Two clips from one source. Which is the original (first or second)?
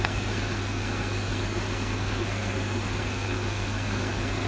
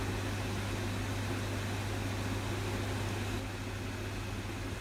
second